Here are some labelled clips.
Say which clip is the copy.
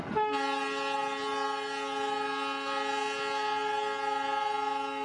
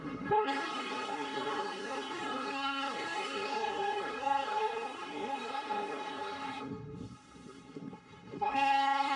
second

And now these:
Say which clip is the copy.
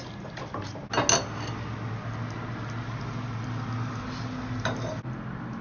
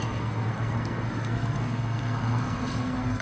second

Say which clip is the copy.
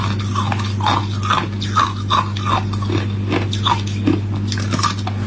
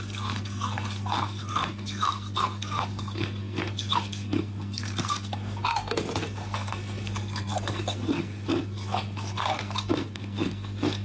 second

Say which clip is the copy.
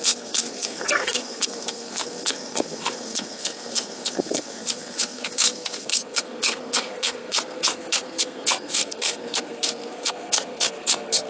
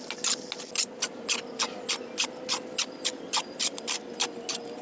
first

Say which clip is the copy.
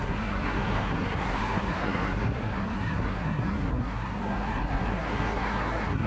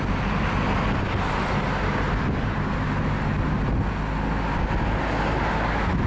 first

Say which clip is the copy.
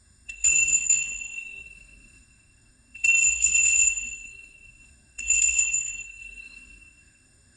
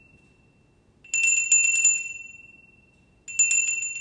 first